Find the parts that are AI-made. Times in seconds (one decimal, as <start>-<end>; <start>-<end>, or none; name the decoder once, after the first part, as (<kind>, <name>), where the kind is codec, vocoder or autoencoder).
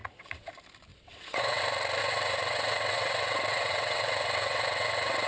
0.0-0.5 (vocoder, WaveNeXt); 0.9-1.6; 2.0-5.3